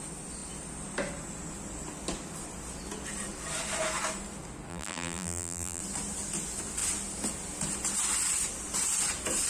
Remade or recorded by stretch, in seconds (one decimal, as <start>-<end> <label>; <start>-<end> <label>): 0.0-4.7 recorded; 4.7-5.8 remade; 5.8-9.5 recorded